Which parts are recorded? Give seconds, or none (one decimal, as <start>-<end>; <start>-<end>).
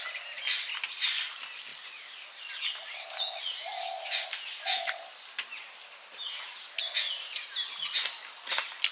0.0-8.9